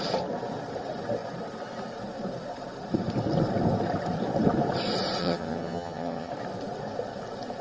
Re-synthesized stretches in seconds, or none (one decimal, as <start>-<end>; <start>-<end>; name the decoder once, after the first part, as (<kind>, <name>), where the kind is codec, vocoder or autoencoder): 5.2-6.3 (vocoder, HiFi-GAN)